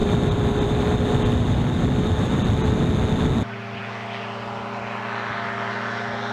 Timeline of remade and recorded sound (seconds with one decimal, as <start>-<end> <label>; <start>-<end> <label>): 0.0-3.8 remade; 3.8-6.3 recorded